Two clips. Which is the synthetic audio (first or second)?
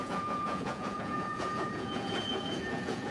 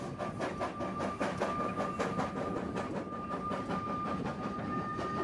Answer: first